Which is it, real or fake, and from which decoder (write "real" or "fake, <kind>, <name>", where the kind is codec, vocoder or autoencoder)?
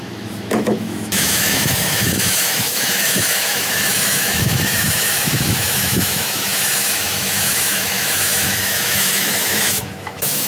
fake, autoencoder, DAC-VAE